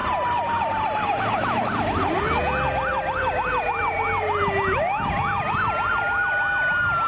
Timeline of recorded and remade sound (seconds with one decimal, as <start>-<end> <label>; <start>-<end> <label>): 0.0-2.0 remade; 2.0-2.9 recorded; 2.9-4.4 remade; 4.4-7.1 recorded